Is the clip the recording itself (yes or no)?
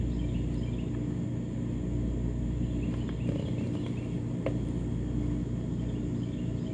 yes